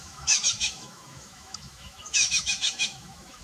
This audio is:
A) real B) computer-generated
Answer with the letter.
B